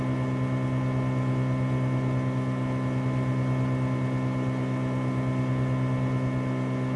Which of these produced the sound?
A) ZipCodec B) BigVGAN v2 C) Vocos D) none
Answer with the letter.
D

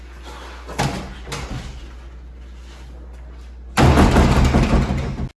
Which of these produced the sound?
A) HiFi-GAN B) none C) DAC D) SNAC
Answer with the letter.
B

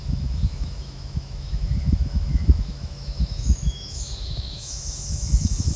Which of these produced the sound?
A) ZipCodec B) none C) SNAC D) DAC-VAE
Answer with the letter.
D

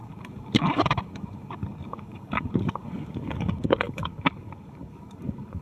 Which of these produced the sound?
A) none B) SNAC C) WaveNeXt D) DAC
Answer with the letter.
D